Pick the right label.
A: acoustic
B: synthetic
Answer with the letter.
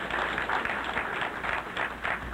A